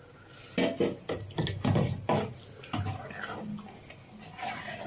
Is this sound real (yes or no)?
yes